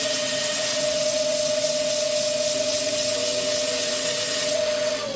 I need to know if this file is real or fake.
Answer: fake